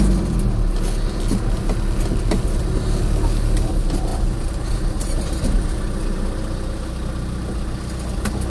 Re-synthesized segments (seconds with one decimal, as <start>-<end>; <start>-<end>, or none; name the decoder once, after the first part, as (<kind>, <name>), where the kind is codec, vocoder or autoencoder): none

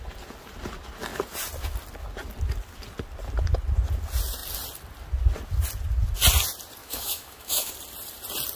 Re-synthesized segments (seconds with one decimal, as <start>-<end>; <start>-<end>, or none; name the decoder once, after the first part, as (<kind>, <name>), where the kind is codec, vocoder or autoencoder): 6.8-7.7 (autoencoder, DAC-VAE)